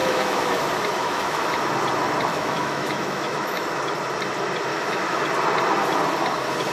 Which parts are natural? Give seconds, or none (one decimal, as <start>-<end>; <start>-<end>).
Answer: 0.6-1.0; 1.6-2.3; 3.8-4.7; 5.2-6.7